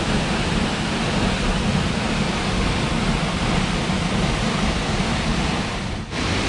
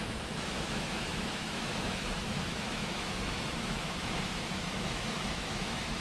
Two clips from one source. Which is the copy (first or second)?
second